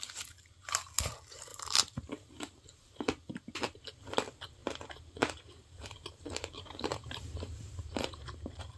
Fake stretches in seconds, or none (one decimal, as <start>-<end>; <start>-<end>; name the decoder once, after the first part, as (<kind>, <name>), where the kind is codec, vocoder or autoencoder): 1.5-3.8 (vocoder, BigVGAN v2); 4.6-8.8